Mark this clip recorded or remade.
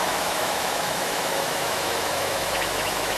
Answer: remade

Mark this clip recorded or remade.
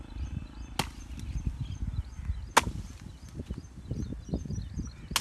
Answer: recorded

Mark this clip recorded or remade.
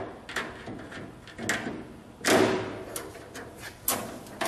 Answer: recorded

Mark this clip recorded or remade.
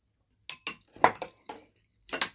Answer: recorded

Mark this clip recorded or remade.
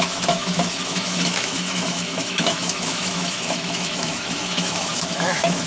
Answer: remade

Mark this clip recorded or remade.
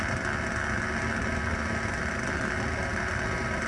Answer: recorded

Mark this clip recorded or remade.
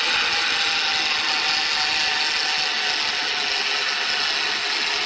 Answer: recorded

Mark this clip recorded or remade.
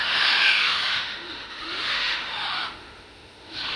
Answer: remade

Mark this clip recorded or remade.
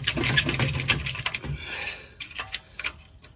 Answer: recorded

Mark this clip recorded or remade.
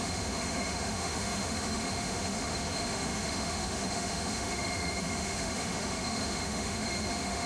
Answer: remade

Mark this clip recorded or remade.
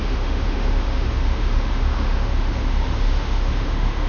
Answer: remade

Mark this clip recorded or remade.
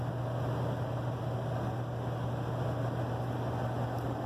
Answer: recorded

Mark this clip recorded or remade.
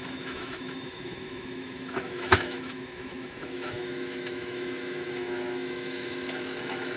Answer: remade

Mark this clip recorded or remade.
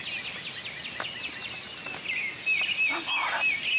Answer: recorded